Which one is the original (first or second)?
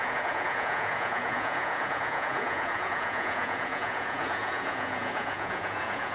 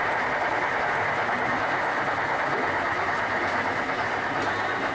second